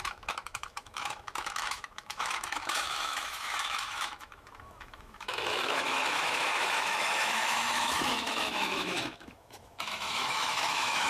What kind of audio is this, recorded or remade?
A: remade